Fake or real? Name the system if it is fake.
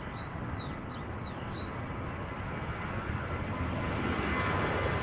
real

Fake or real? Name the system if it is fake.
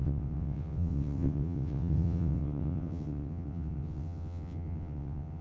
fake, vocoder, WaveNeXt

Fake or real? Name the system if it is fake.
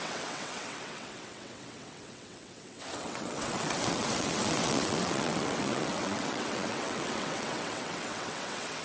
fake, vocoder, WaveNeXt